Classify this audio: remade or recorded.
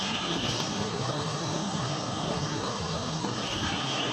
remade